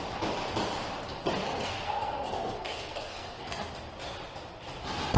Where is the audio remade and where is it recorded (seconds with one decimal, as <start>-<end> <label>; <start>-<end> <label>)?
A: 0.0-1.4 recorded; 1.4-3.7 remade; 3.7-5.2 recorded